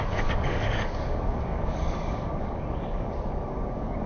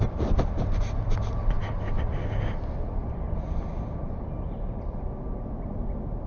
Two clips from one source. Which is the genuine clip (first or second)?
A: second